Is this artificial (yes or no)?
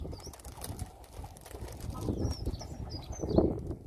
no